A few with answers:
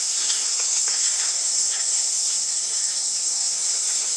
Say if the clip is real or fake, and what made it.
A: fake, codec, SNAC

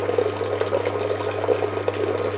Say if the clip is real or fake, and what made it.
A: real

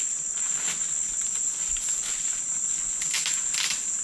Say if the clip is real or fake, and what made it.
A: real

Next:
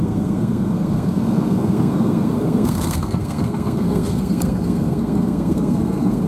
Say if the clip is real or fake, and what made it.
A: fake, codec, SNAC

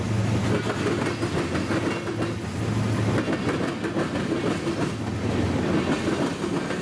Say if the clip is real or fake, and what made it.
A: real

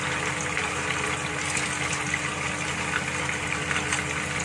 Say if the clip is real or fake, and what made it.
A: real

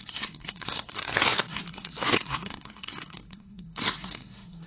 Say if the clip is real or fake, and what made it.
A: fake, codec, SNAC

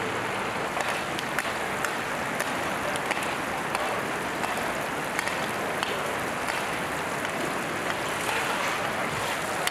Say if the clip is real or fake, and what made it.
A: real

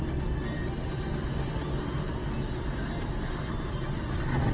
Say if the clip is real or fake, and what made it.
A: real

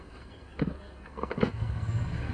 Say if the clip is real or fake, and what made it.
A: fake, codec, SNAC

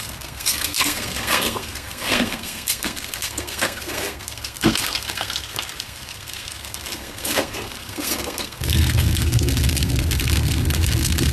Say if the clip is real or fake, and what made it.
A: fake, codec, SNAC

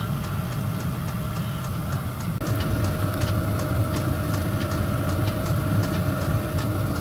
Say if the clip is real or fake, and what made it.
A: real